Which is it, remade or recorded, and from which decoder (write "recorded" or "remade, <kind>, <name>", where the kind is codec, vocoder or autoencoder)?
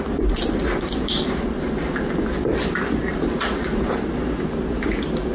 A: recorded